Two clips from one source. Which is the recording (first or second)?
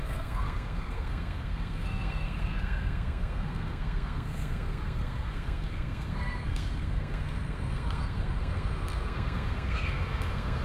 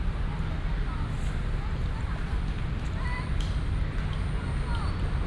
second